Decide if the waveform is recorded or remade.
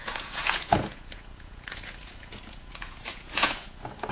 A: remade